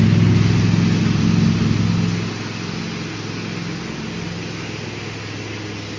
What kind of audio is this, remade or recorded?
recorded